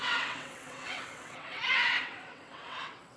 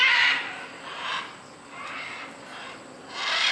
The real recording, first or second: second